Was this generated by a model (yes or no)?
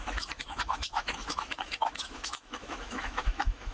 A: yes